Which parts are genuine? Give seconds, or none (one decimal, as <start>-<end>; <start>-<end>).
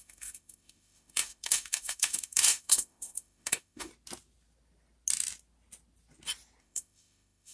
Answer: 3.9-6.6